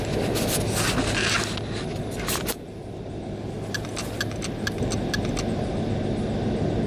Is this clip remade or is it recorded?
recorded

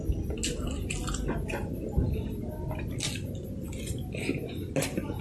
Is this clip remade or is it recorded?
recorded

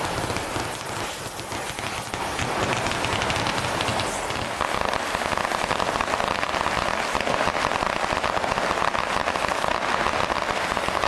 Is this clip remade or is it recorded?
recorded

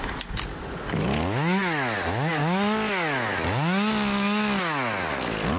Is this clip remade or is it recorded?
recorded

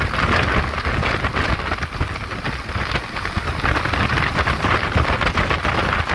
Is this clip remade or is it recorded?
recorded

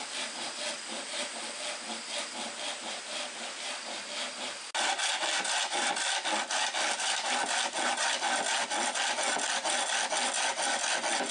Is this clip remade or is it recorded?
recorded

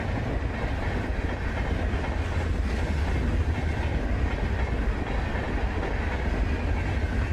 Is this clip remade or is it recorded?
recorded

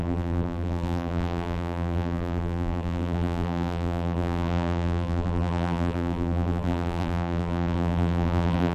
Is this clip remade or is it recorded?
remade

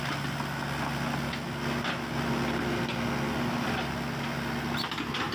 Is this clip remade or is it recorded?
recorded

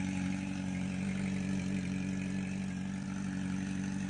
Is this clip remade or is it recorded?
recorded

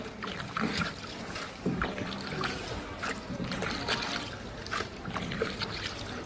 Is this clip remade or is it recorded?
recorded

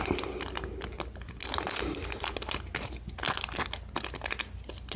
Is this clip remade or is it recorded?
recorded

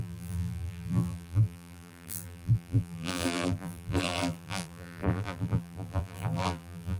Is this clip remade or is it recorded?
remade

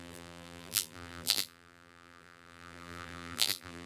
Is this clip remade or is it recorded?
remade